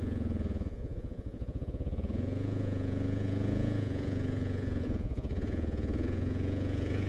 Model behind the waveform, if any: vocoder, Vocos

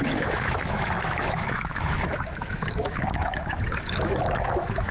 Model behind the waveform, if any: autoencoder, DAC-VAE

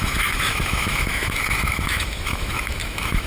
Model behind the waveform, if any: autoencoder, DAC-VAE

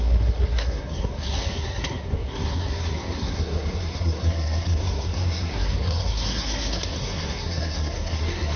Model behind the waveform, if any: codec, SNAC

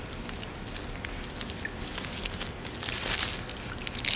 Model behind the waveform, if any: none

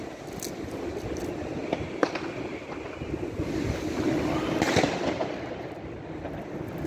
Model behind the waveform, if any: none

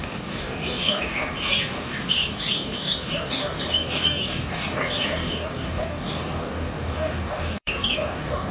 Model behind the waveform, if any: codec, DAC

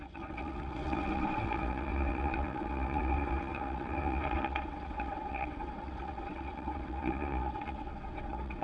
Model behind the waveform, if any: vocoder, WaveNeXt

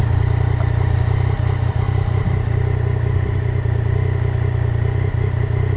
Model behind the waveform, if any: none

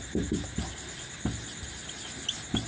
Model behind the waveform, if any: none